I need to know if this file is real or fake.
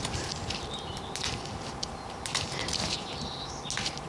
real